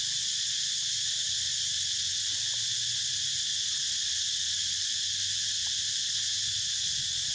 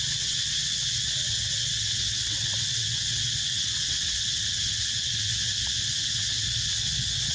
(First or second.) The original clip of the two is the first